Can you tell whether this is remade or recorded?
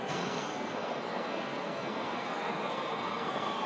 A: remade